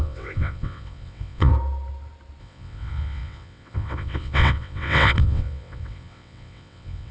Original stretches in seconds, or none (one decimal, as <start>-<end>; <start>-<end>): 1.5-2.4

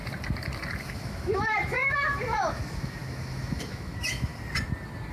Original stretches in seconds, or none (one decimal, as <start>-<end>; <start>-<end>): 0.0-0.8; 4.3-5.1

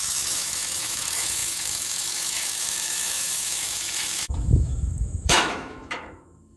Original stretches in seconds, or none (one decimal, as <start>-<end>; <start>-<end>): none